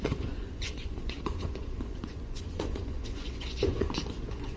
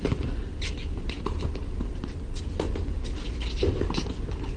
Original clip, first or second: second